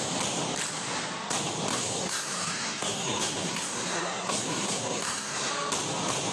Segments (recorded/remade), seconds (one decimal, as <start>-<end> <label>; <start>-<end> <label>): 0.0-1.7 recorded; 1.7-5.5 remade; 5.5-6.3 recorded